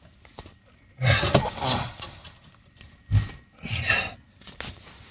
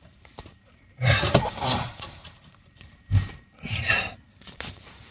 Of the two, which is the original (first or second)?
first